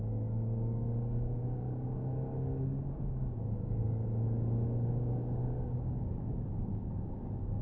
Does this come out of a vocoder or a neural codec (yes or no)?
yes